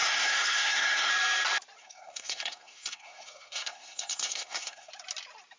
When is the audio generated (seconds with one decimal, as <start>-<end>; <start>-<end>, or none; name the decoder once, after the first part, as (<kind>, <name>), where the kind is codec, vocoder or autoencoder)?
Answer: 0.0-1.1 (codec, SNAC); 1.8-4.9